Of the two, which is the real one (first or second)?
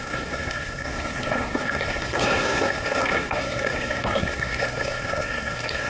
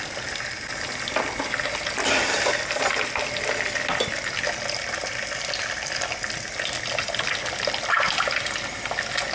second